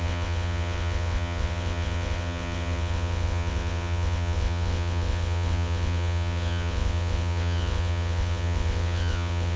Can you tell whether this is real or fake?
fake